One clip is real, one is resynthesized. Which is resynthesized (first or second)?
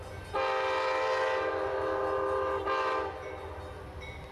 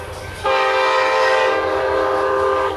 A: second